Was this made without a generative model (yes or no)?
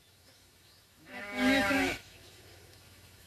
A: no